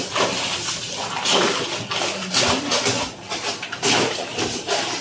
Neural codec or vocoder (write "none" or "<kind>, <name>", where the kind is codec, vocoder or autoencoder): none